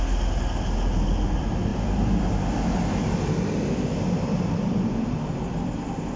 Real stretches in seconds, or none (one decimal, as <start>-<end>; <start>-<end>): 0.0-6.2